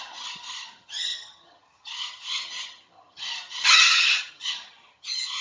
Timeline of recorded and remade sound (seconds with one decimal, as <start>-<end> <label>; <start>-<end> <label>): 0.0-5.4 remade